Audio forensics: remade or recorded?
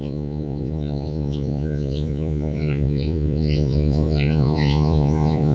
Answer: remade